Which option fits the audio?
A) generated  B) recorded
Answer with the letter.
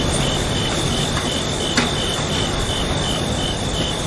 B